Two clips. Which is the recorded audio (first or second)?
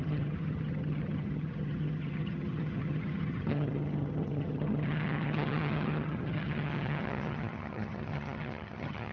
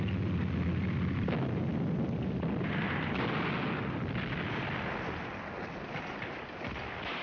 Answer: second